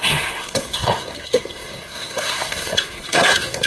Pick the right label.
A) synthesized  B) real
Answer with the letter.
A